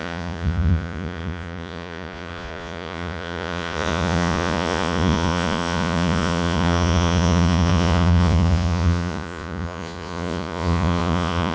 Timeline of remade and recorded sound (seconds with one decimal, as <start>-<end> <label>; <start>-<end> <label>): 0.0-11.5 remade